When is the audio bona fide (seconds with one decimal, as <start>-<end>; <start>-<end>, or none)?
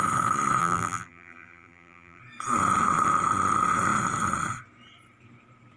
0.0-0.6; 2.2-5.8